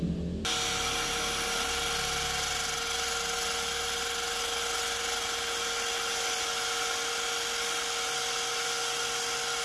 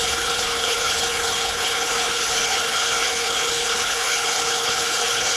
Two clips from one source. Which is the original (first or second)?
first